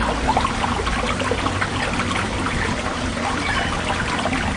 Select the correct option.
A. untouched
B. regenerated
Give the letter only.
A